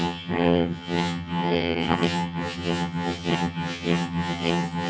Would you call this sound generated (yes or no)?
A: yes